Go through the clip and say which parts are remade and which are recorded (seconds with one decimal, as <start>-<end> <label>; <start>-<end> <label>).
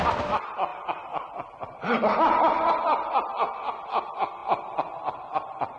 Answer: 0.0-0.7 recorded; 0.7-2.7 remade; 2.7-5.8 recorded